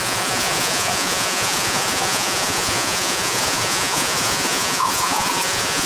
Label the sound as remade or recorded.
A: remade